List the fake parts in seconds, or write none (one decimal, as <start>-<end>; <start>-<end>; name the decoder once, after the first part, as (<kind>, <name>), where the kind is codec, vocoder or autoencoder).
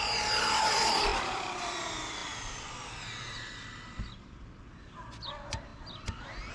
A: 0.0-6.5 (vocoder, BigVGAN v2)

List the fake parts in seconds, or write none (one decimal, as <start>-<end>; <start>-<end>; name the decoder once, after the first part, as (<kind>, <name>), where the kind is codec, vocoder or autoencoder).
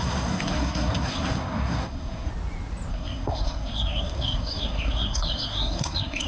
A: 0.0-2.3 (codec, SNAC); 2.9-6.3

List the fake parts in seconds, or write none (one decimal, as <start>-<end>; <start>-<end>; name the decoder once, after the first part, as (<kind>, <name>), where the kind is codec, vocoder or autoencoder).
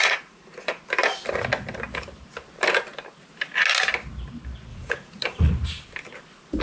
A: 0.0-0.8 (vocoder, Vocos); 4.7-5.5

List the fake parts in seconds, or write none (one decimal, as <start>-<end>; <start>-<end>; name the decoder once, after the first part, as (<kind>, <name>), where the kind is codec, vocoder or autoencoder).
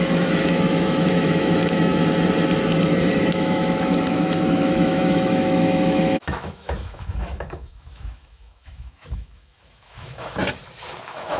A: 0.0-2.0 (autoencoder, DAC-VAE); 3.3-10.4; 11.0-11.4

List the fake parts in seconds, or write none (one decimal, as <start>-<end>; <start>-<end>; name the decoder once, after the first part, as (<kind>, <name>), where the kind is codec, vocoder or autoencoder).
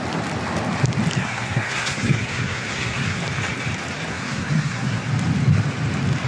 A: 1.2-3.2 (codec, SNAC); 4.1-5.1